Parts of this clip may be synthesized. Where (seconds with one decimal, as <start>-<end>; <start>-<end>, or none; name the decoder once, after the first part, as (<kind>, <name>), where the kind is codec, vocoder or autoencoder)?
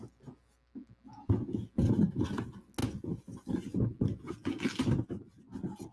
none